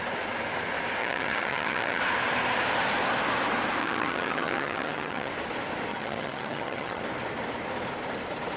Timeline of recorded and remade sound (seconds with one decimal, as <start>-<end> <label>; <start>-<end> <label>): 0.0-1.0 recorded; 1.0-2.0 remade; 2.0-3.8 recorded; 3.8-5.3 remade; 5.3-5.9 recorded; 5.9-7.0 remade; 7.0-8.6 recorded